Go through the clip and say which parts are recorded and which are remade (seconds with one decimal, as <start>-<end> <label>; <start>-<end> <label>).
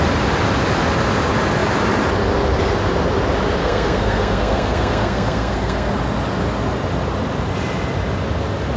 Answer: 0.0-3.6 recorded; 3.6-5.9 remade; 5.9-8.8 recorded